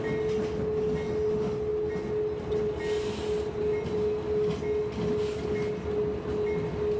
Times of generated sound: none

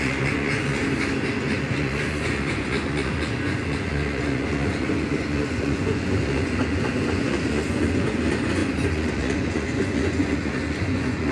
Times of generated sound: 0.0-0.8 (vocoder, Vocos); 1.5-11.3